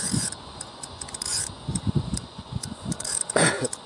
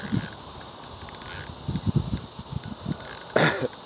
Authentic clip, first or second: second